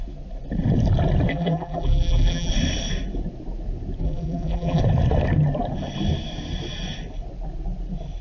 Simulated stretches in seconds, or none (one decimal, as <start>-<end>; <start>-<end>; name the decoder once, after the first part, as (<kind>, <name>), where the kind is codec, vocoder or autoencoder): 1.3-2.5 (vocoder, BigVGAN v2); 4.0-4.8